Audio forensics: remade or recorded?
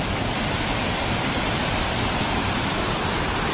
remade